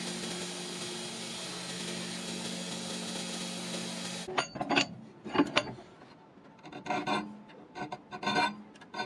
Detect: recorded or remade recorded